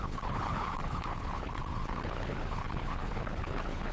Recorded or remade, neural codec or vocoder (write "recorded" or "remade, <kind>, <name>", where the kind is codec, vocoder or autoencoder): remade, codec, HILCodec